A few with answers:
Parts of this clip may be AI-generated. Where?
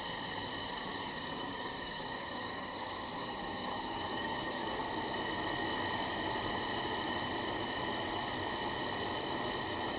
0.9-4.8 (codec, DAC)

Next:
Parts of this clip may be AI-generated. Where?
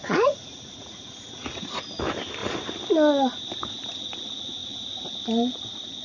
0.0-1.8 (vocoder, Vocos)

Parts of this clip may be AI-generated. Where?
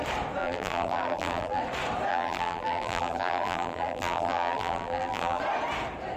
0.4-1.6 (vocoder, BigVGAN v2); 2.1-5.4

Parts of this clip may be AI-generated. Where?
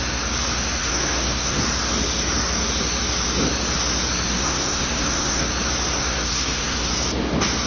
0.8-1.6 (codec, SNAC); 4.3-5.5; 5.9-6.9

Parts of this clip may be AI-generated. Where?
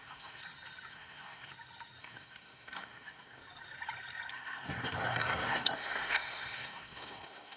0.0-0.4 (codec, SNAC); 0.9-1.5; 2.0-3.4; 4.3-7.6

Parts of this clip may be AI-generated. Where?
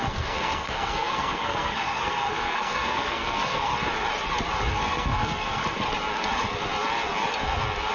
0.0-3.7 (codec, SNAC); 4.7-5.6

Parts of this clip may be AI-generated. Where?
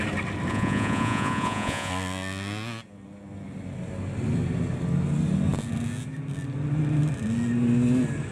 0.5-1.9 (vocoder, Vocos)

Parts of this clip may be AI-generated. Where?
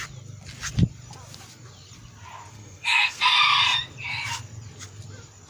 2.5-3.2 (codec, SNAC)